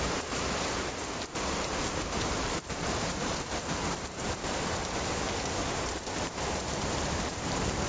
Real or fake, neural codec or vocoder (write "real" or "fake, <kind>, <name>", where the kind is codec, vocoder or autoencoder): fake, vocoder, BigVGAN v2